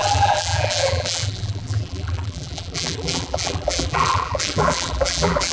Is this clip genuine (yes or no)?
no